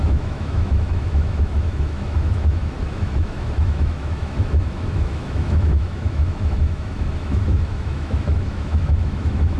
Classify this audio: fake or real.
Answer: fake